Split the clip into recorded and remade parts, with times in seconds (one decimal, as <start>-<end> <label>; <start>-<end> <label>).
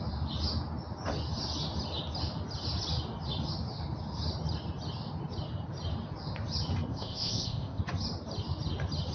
0.0-6.9 recorded; 6.9-7.8 remade; 7.8-9.1 recorded